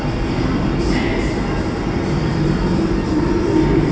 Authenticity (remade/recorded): remade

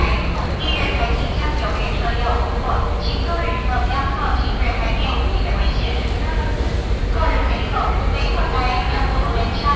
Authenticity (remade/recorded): recorded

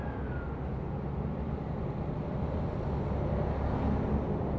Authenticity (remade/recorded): recorded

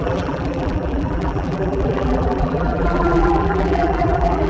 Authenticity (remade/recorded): remade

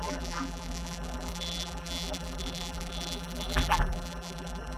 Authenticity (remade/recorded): remade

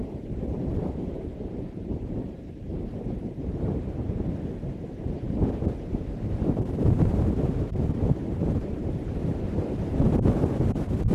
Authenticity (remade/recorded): remade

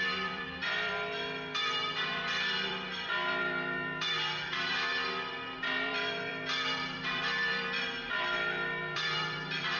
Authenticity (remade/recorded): remade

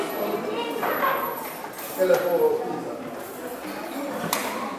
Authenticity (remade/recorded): recorded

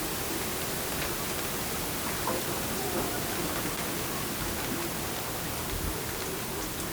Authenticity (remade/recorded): recorded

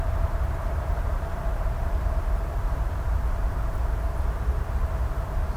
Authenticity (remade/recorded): remade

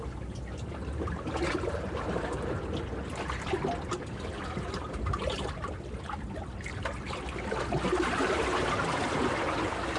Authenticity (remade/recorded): remade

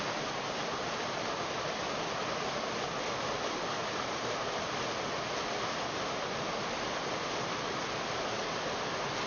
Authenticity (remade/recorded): recorded